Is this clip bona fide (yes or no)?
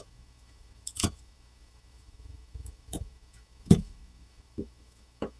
no